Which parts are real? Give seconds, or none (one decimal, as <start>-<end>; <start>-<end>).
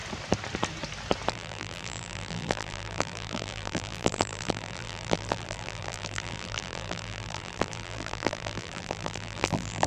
0.0-1.3